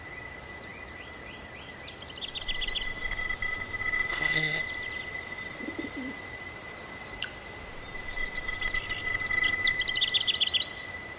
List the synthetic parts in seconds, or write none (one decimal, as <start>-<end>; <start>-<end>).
4.1-4.6